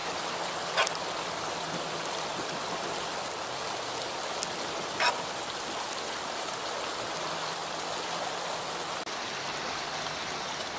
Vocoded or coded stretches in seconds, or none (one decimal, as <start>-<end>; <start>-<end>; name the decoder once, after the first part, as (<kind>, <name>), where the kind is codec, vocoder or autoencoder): none